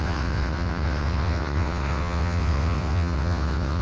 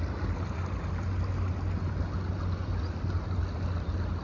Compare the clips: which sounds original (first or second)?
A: second